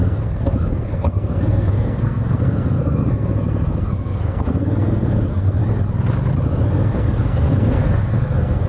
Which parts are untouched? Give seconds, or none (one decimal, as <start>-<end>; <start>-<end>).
5.6-6.7